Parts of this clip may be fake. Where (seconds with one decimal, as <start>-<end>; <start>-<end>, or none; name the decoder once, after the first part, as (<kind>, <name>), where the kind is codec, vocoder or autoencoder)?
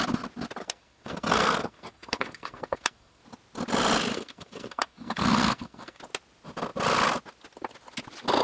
0.6-3.2 (codec, SNAC); 4.1-6.0